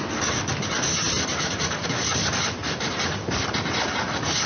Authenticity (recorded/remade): remade